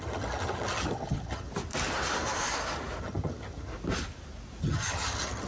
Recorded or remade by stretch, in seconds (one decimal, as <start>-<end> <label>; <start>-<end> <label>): 0.0-1.5 remade; 1.5-3.0 recorded; 3.0-3.7 remade; 3.7-4.6 recorded; 4.6-5.5 remade